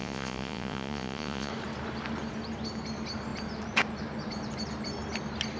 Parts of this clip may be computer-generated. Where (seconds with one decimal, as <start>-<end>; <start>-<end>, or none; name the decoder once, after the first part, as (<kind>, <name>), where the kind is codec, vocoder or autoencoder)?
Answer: 0.0-1.5 (vocoder, Vocos)